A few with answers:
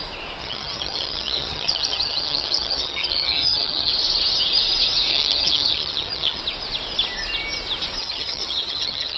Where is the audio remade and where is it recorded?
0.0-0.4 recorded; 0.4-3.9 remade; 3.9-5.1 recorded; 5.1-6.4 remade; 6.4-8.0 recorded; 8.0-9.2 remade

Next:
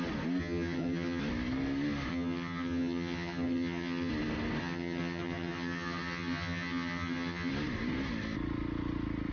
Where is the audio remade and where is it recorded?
0.0-0.4 recorded; 0.4-1.2 remade; 1.2-2.1 recorded; 2.1-4.1 remade; 4.1-4.6 recorded; 4.6-7.5 remade; 7.5-9.3 recorded

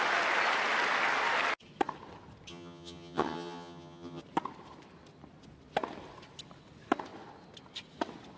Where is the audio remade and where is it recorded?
0.0-2.5 recorded; 2.5-4.2 remade; 4.2-8.4 recorded

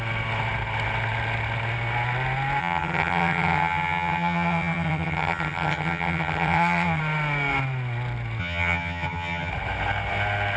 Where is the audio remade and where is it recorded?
0.0-2.6 recorded; 2.6-7.0 remade; 7.0-8.4 recorded; 8.4-9.5 remade; 9.5-10.6 recorded